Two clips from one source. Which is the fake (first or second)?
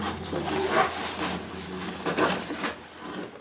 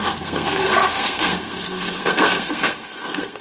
second